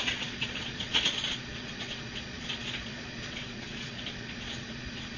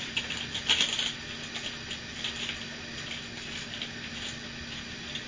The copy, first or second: first